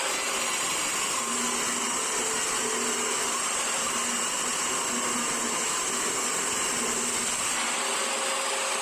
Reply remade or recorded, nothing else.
recorded